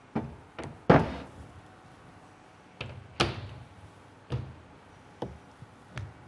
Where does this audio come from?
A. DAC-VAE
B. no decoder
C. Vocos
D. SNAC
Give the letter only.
B